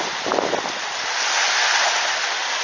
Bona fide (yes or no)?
yes